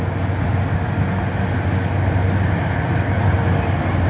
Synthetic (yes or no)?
no